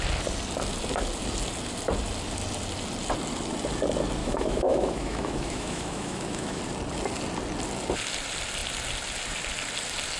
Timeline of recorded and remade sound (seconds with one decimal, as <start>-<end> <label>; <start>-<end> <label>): 0.0-4.2 recorded; 4.2-6.6 remade; 6.6-10.2 recorded

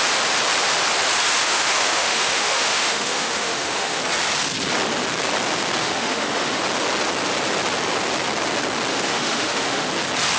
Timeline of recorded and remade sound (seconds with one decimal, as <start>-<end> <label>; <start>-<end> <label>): 0.0-1.4 recorded; 1.4-4.0 remade; 4.0-5.8 recorded; 5.8-6.6 remade; 6.6-8.9 recorded; 8.9-9.9 remade; 9.9-10.4 recorded

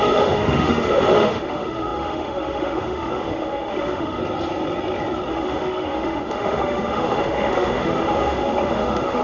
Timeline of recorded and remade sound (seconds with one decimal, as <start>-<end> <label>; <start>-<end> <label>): 0.0-4.2 remade; 4.2-5.3 recorded; 5.3-9.2 remade

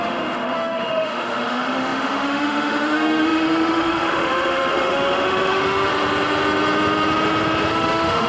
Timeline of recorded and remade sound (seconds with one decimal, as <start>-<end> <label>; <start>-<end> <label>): 0.0-5.9 remade; 5.9-7.7 recorded; 7.7-8.3 remade

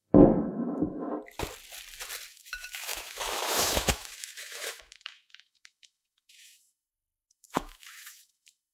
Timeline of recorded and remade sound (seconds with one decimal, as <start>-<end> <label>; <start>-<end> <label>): 0.0-1.1 remade; 1.1-2.3 recorded; 2.3-8.7 remade

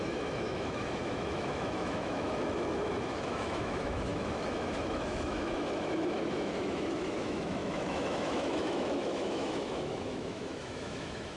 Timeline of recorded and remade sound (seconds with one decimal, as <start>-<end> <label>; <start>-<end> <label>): 0.0-11.4 remade